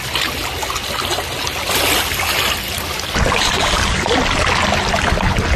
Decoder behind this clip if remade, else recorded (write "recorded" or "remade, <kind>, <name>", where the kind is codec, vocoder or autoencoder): recorded